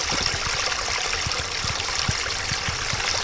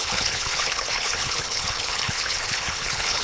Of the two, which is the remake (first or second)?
second